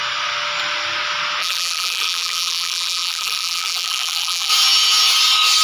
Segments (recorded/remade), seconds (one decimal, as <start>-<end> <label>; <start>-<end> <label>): 0.0-1.4 recorded; 1.4-4.5 remade; 4.5-5.6 recorded